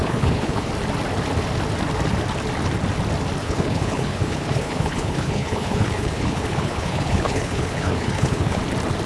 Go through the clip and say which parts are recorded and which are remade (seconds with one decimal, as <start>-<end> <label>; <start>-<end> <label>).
0.0-0.7 remade; 0.7-3.4 recorded; 3.4-8.6 remade; 8.6-9.1 recorded